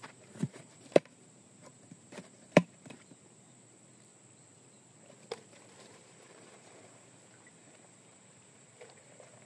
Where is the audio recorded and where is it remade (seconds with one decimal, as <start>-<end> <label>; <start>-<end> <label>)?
0.0-4.1 remade; 4.1-5.8 recorded; 5.8-9.5 remade